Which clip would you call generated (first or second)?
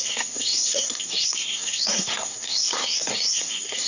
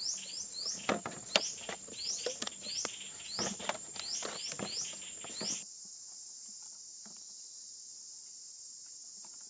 first